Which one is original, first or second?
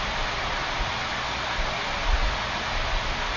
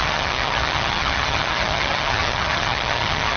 first